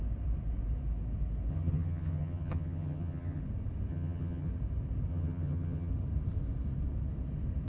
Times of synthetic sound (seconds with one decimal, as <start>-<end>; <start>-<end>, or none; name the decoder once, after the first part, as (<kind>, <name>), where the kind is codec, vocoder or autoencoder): 1.5-3.4 (vocoder, HiFi-GAN); 3.9-4.5; 5.1-5.9